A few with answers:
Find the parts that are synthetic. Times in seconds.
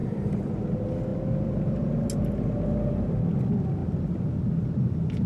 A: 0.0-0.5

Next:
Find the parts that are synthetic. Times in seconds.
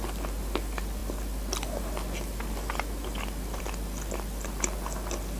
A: none